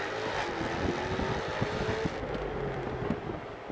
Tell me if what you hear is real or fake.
real